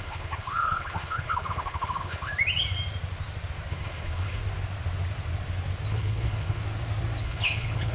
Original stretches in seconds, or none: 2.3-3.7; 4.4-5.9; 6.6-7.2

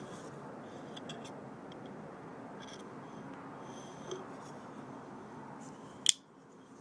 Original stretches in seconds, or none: 0.0-6.8

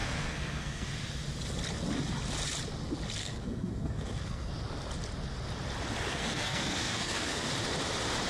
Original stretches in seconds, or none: 0.9-3.2; 4.5-6.1; 7.5-8.3

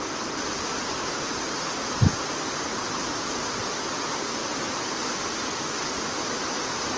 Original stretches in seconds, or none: 0.0-7.0

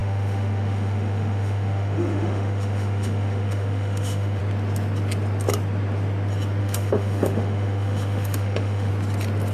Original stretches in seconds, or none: 4.4-6.6; 8.9-9.5

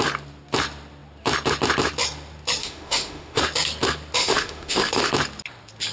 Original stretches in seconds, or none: 0.0-2.6; 3.4-4.2; 5.1-5.9

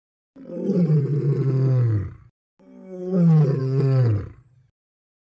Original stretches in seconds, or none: 1.0-5.2